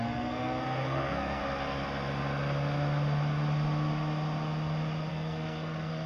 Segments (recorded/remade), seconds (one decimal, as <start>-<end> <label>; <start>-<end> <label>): 0.0-1.4 remade; 1.4-5.1 recorded; 5.1-6.1 remade